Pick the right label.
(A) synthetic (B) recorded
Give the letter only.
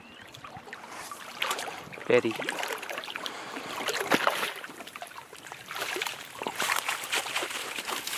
A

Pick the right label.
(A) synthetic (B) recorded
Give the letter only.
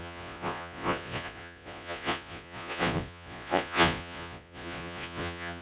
A